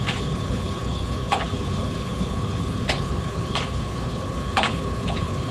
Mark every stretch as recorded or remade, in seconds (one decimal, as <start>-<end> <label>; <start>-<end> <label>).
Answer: 0.0-5.5 remade